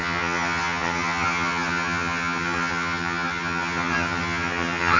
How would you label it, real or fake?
fake